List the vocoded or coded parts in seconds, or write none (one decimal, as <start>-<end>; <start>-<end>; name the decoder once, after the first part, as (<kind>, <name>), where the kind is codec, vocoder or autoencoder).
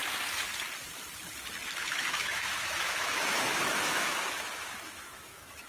1.8-5.7 (autoencoder, DAC-VAE)